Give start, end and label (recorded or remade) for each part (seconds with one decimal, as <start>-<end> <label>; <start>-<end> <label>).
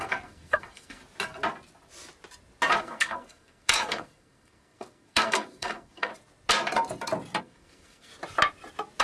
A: 0.0-1.0 remade; 1.0-2.8 recorded; 2.8-6.1 remade; 6.1-7.4 recorded; 7.4-8.1 remade; 8.1-9.0 recorded